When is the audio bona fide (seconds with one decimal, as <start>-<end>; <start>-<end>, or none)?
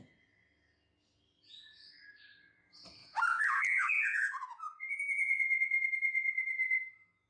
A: 0.0-3.0